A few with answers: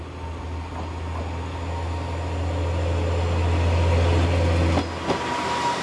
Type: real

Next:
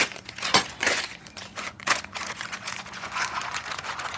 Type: fake